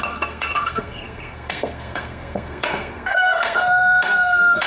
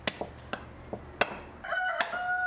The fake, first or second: first